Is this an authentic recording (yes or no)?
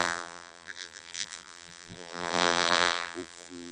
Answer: no